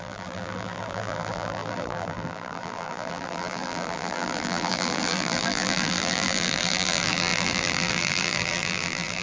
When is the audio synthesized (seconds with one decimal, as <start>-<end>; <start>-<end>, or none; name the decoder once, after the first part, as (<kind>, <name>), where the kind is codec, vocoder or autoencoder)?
0.0-9.2 (vocoder, BigVGAN v2)